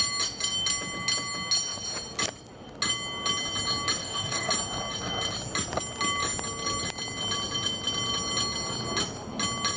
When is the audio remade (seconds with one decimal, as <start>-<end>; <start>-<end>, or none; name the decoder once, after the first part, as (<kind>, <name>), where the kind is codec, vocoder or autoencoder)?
4.0-4.5 (codec, DAC)